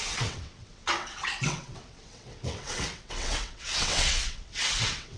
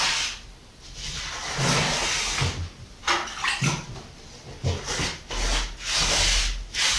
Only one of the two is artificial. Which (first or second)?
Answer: first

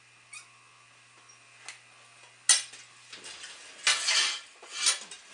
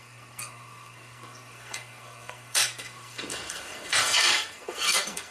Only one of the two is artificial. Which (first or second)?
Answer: second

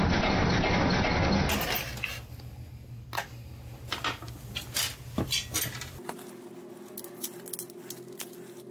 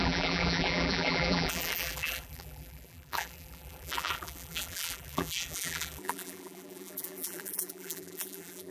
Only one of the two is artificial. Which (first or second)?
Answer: second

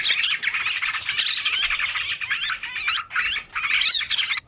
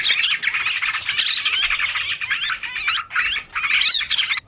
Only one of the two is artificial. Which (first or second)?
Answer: first